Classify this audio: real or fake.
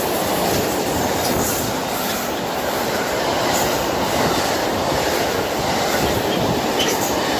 fake